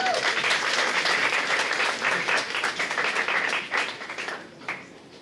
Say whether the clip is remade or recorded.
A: remade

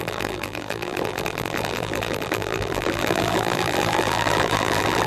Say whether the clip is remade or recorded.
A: remade